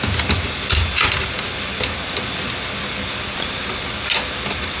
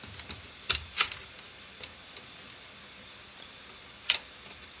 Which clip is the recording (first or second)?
first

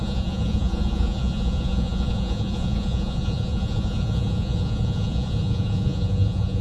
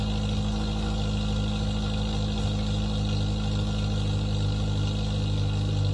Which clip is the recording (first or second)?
second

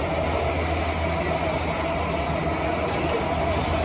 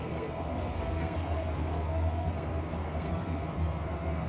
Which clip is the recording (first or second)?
first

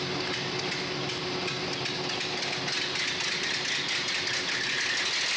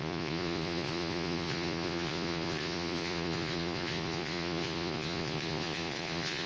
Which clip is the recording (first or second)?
first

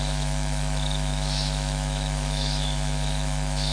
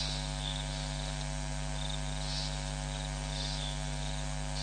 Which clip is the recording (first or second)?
second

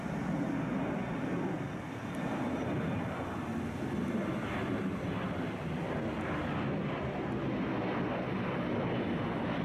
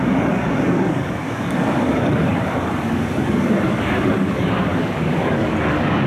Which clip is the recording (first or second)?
first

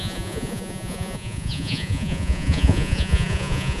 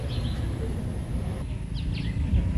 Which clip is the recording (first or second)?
second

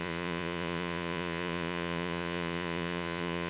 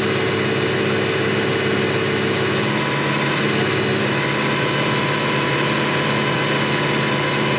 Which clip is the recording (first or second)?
second